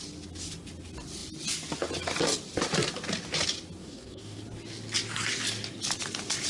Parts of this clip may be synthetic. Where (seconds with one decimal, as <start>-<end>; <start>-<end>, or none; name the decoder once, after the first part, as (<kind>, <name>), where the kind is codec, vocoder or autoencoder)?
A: 3.8-4.4 (codec, DAC)